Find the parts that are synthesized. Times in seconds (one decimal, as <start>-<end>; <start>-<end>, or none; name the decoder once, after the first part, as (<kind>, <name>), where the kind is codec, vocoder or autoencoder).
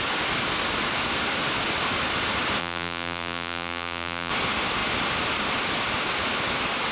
2.6-4.3 (vocoder, BigVGAN v2)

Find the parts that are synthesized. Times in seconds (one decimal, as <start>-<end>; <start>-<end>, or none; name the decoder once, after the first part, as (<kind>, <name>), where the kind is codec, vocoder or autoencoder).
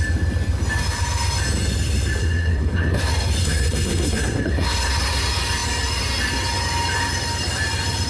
2.2-3.0 (codec, SNAC); 3.4-4.9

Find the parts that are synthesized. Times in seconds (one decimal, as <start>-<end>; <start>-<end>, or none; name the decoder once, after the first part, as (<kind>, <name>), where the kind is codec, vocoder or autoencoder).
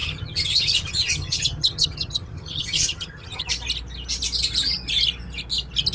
0.0-3.5 (vocoder, HiFi-GAN)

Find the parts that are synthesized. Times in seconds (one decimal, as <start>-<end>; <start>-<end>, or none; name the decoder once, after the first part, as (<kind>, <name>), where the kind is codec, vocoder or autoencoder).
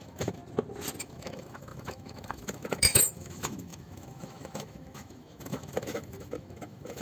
0.0-0.4 (autoencoder, DAC-VAE); 1.0-7.0